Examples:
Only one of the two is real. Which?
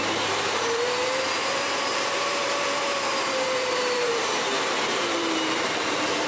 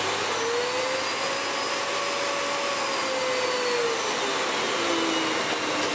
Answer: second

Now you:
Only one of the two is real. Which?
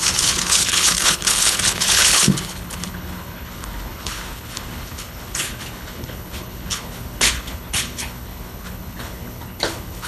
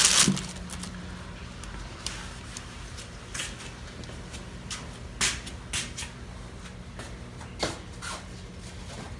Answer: second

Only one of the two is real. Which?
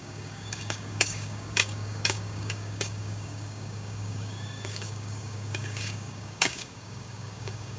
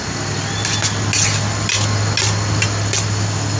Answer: second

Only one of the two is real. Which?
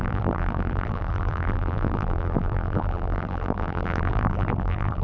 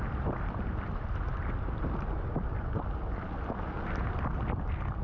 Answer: second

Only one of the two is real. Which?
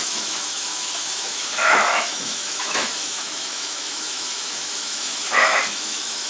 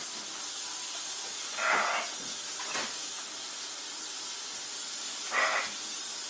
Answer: second